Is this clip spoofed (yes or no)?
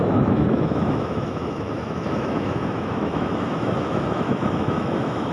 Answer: yes